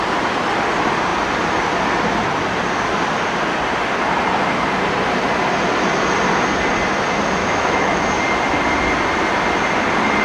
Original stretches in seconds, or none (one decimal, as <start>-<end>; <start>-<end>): 0.0-7.4; 8.0-10.2